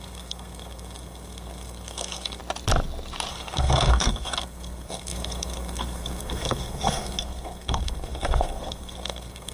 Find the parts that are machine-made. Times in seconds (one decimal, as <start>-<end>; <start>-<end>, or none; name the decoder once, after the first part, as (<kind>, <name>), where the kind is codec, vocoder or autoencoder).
0.0-2.4 (codec, SNAC); 3.3-9.5